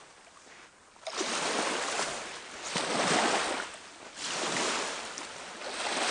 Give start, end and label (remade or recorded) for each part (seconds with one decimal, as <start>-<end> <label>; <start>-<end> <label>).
0.0-6.1 recorded